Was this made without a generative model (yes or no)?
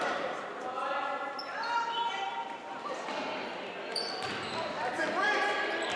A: no